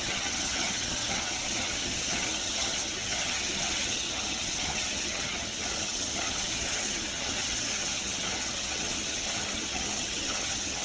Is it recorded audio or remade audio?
remade